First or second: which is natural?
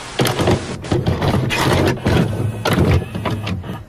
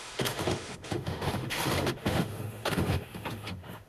first